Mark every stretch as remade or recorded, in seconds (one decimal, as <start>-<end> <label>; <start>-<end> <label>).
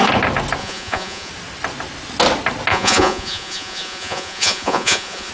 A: 0.0-0.6 recorded; 0.6-1.3 remade; 1.3-2.7 recorded; 2.7-5.3 remade